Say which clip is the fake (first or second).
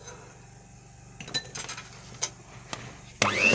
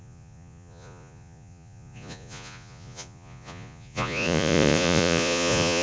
second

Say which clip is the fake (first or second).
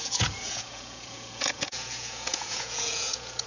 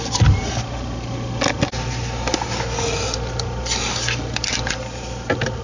first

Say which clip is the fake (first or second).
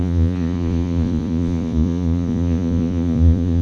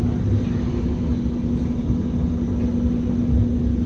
first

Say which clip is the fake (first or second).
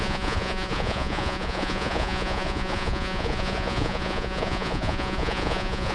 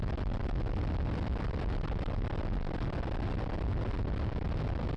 first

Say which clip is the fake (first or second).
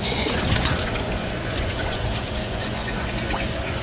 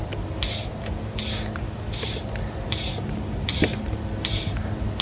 first